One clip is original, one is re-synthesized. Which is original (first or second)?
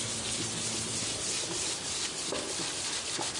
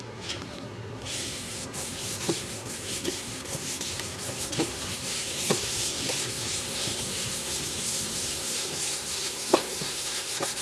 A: first